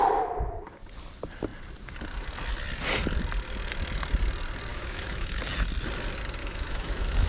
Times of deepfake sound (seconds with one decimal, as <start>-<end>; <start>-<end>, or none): 4.7-5.4; 6.4-7.3